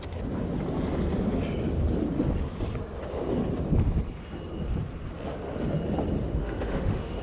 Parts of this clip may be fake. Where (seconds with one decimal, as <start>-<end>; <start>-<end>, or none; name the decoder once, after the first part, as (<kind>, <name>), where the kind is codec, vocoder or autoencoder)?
6.3-7.2 (autoencoder, DAC-VAE)

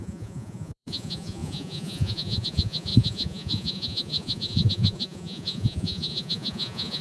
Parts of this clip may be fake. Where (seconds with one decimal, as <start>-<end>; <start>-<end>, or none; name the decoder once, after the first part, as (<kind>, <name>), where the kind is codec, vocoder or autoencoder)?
0.0-7.0 (vocoder, Vocos)

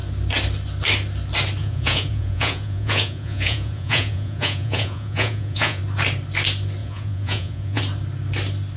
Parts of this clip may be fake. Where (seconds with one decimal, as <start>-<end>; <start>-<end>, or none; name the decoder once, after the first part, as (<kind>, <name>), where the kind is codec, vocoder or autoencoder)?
1.6-5.8 (vocoder, Vocos); 6.8-7.8

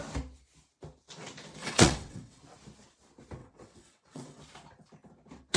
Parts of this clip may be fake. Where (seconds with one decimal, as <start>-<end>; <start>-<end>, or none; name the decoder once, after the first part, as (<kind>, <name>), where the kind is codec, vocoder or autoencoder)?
1.6-2.4 (vocoder, WaveNeXt); 3.4-4.4

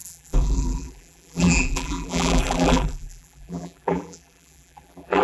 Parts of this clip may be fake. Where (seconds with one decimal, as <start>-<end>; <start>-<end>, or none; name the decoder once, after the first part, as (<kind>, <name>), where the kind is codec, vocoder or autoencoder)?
0.0-5.2 (vocoder, BigVGAN v2)

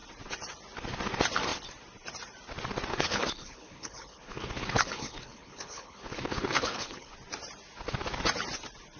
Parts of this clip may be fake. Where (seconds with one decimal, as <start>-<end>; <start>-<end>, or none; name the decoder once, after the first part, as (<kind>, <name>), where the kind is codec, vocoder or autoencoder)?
2.9-7.1 (codec, HILCodec)

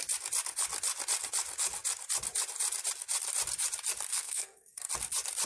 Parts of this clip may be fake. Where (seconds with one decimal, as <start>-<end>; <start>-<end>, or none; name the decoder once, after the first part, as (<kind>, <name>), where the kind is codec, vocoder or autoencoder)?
4.1-4.9 (codec, SNAC)